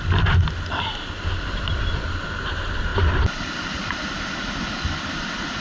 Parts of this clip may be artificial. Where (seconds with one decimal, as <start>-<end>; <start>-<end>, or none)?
none